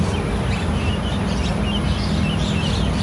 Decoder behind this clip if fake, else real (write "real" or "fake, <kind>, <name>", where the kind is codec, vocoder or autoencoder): real